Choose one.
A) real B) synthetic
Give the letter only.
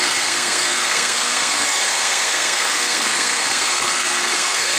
B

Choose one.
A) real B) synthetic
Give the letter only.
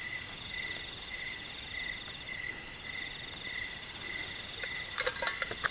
A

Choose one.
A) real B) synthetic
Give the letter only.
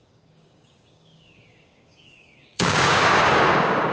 B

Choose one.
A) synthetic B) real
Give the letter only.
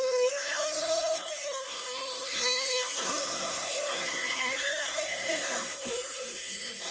A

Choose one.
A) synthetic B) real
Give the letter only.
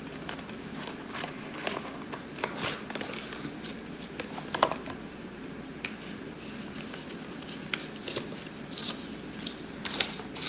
B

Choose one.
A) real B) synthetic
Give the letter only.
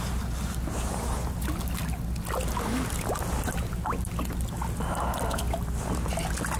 A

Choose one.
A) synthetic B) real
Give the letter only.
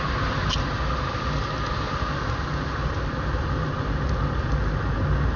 B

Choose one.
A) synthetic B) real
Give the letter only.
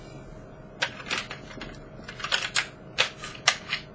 B